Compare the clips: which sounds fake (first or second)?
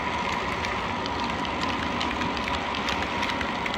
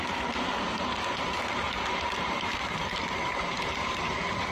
second